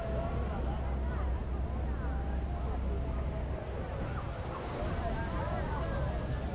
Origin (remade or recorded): recorded